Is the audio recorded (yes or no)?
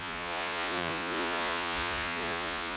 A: no